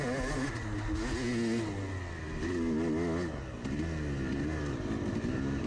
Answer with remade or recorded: recorded